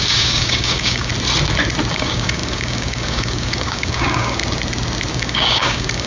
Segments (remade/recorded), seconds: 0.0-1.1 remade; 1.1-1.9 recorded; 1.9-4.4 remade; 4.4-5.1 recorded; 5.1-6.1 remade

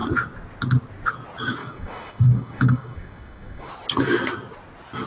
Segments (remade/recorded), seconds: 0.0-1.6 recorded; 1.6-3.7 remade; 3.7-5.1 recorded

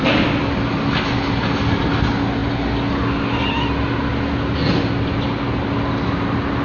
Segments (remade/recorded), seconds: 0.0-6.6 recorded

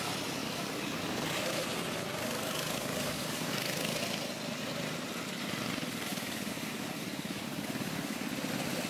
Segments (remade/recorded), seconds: 0.0-0.4 recorded; 0.4-1.7 remade; 1.7-2.1 recorded; 2.1-4.0 remade; 4.0-6.1 recorded; 6.1-8.2 remade; 8.2-8.9 recorded